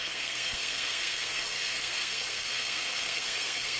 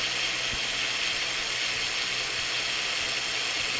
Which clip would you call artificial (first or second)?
first